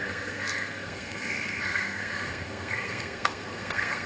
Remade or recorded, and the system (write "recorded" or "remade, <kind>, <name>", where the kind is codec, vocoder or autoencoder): remade, codec, SNAC